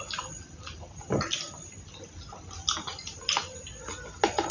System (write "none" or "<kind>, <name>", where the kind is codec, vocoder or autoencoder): none